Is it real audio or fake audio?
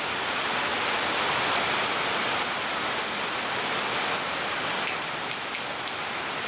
real